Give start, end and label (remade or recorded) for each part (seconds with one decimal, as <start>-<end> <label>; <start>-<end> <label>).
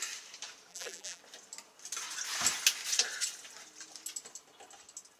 0.0-0.7 recorded; 0.7-1.2 remade; 1.2-5.2 recorded